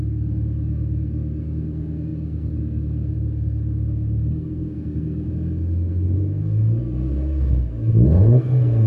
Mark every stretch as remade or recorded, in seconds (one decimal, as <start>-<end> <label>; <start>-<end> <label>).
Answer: 0.0-8.9 remade